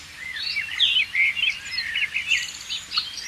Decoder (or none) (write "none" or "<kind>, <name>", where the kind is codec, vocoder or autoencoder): none